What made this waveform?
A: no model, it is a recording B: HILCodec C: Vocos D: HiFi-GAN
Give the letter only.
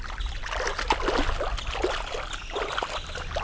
A